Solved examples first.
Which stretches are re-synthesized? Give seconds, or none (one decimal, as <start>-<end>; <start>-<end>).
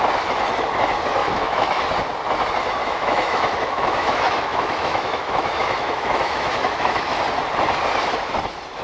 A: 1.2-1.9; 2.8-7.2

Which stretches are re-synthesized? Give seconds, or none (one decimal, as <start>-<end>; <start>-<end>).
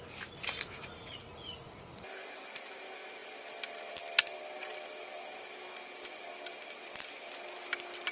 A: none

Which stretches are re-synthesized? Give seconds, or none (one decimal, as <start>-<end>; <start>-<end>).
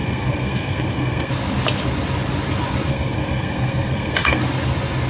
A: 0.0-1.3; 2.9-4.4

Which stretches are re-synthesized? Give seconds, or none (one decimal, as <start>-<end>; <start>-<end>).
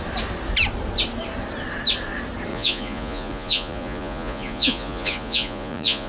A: 2.5-6.1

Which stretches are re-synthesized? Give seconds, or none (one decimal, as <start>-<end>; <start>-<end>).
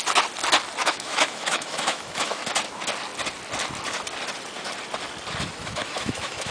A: 0.8-2.4; 5.6-6.5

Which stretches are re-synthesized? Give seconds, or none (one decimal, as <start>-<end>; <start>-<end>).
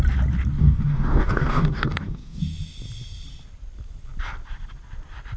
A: 0.6-2.4